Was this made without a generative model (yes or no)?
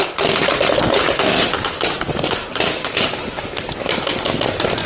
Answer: yes